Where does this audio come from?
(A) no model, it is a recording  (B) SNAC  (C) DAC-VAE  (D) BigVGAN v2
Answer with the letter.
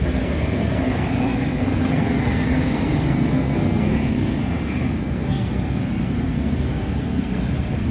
B